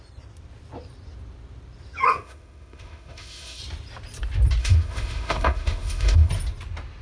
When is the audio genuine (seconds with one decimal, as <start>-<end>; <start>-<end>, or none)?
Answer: 0.0-2.1; 3.6-4.6; 6.3-7.0